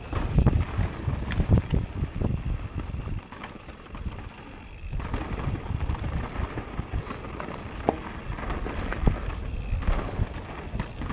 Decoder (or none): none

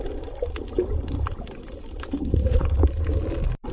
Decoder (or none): none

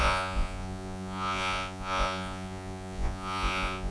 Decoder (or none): vocoder, Vocos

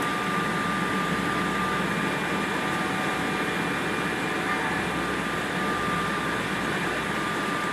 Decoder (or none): none